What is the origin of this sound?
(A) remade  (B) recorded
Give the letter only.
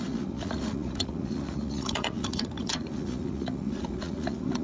A